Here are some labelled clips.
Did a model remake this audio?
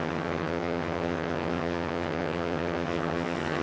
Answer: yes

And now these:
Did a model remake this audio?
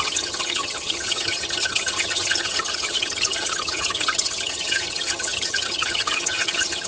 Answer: yes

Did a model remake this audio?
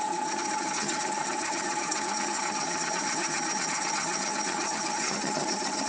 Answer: yes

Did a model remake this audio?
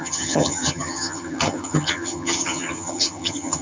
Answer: yes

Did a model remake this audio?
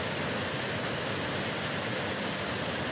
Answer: no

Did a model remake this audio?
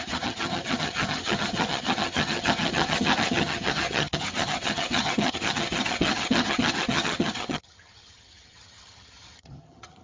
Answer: yes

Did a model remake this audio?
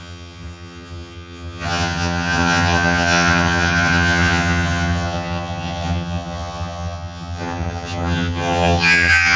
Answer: yes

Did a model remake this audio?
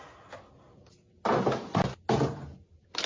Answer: no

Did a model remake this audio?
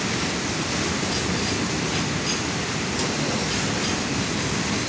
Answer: no